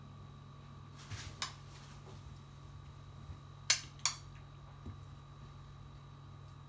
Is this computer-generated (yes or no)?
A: no